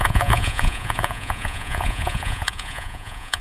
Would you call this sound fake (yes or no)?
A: yes